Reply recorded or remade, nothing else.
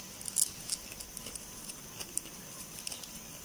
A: recorded